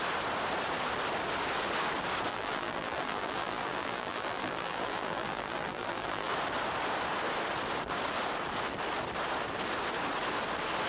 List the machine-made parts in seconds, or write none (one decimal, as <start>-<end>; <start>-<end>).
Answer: 2.3-6.3